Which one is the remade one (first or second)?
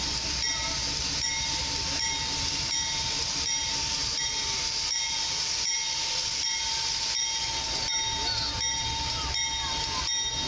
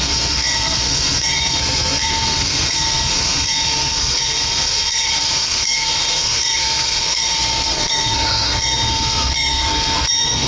second